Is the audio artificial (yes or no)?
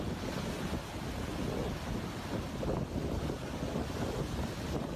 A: no